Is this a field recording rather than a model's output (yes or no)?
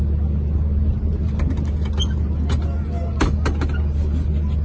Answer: yes